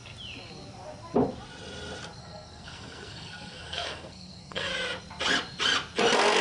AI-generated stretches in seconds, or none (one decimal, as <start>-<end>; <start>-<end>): 2.2-4.7